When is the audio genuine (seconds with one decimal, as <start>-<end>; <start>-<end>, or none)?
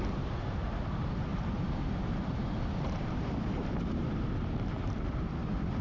none